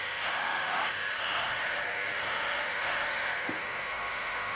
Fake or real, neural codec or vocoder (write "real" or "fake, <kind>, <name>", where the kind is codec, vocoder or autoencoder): fake, autoencoder, DAC-VAE